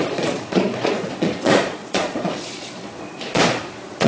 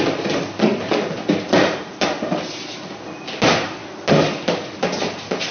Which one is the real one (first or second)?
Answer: second